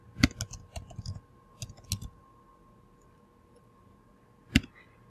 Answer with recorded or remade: recorded